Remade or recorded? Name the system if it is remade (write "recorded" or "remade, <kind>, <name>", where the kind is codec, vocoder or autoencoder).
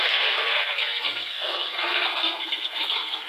remade, codec, SNAC